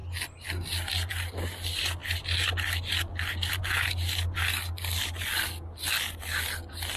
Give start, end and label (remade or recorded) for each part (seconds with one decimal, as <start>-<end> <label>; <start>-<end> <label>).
0.0-7.0 recorded